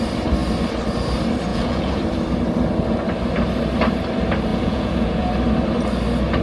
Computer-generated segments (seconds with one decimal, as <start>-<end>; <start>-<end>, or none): 1.5-2.0; 4.5-5.3